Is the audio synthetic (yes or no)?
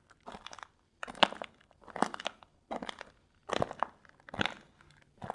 no